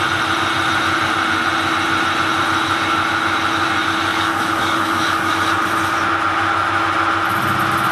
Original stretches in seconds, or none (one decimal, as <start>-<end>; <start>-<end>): 0.0-4.1; 5.3-7.9